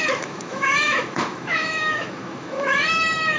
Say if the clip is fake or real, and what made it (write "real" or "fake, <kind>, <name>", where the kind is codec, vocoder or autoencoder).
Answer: fake, autoencoder, DAC-VAE